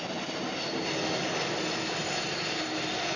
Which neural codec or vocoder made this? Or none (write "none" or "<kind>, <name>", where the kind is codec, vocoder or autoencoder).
none